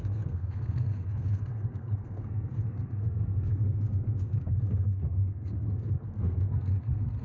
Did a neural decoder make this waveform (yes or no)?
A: yes